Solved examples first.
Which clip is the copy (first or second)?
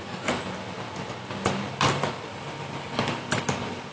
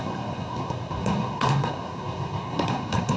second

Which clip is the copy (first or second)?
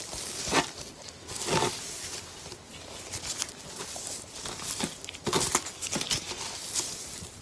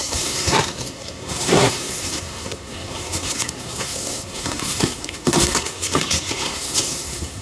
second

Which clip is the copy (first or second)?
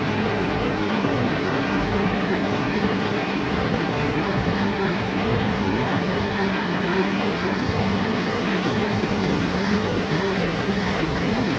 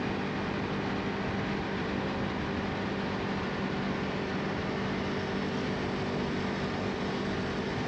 first